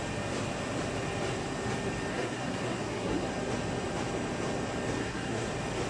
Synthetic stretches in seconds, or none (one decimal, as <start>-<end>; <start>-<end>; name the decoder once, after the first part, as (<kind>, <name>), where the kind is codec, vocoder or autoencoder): 2.1-3.3 (codec, SNAC); 5.0-5.5